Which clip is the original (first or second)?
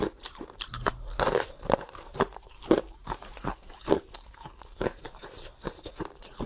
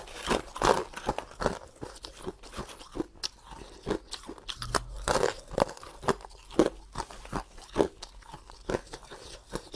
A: second